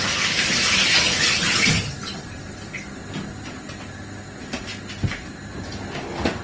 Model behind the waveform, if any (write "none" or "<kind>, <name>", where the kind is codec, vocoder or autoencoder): none